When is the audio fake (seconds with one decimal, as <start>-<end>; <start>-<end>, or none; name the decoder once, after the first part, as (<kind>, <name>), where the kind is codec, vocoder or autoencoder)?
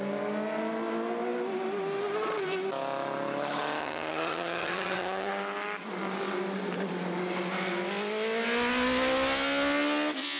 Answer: 3.8-5.3 (vocoder, HiFi-GAN)